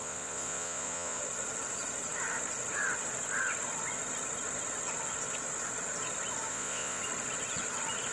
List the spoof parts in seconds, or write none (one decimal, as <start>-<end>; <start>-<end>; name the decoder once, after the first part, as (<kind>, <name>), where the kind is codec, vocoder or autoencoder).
0.0-1.2 (vocoder, Vocos); 6.5-7.0

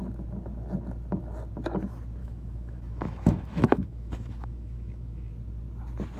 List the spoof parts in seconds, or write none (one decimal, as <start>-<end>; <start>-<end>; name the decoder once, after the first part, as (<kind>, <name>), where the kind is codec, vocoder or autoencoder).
2.2-5.3 (autoencoder, DAC-VAE)